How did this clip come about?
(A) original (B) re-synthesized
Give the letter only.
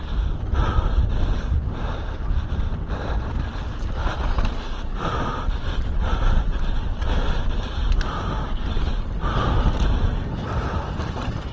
A